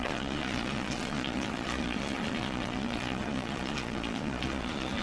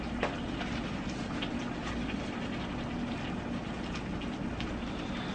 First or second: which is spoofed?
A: first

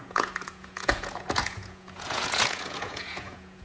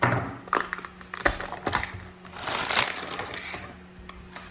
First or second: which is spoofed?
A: first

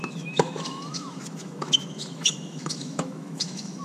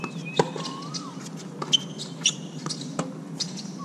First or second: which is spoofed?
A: first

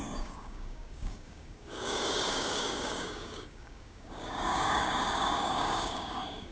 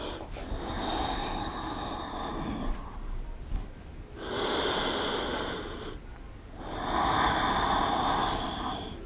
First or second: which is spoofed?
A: first